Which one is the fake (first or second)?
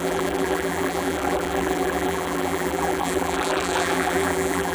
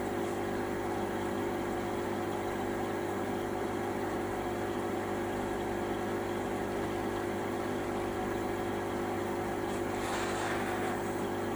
first